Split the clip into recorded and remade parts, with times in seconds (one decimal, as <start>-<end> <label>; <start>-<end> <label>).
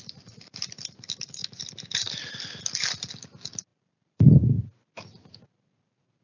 0.0-6.2 recorded